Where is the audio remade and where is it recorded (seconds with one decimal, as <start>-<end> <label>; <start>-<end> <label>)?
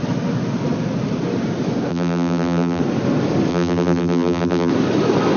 0.0-1.9 recorded; 1.9-2.8 remade; 2.8-3.5 recorded; 3.5-4.7 remade; 4.7-5.4 recorded